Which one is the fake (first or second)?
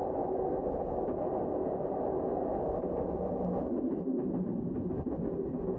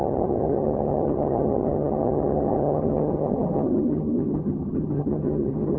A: second